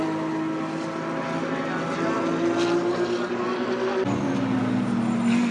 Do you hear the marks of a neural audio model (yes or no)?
no